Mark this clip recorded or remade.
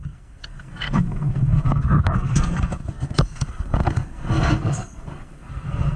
remade